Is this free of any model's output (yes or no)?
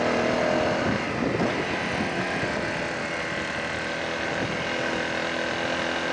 yes